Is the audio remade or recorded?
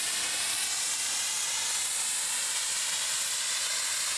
recorded